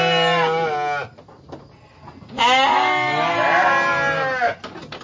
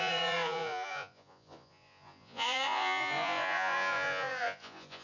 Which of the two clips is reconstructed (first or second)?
second